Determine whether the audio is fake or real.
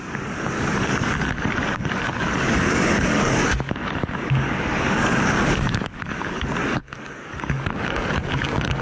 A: fake